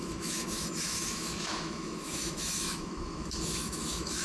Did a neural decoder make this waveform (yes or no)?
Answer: yes